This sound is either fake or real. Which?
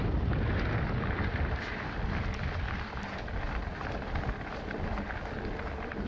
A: real